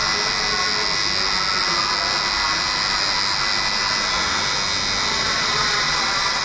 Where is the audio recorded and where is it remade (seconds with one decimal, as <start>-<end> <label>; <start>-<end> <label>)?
0.0-5.1 recorded; 5.1-6.4 remade